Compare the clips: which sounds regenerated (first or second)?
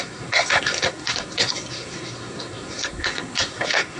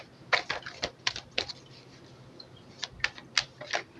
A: first